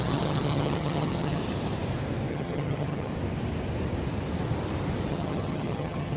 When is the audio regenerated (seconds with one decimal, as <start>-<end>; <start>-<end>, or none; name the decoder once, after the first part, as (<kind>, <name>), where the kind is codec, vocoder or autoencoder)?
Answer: 0.0-1.4 (vocoder, HiFi-GAN); 2.3-3.1; 5.1-6.2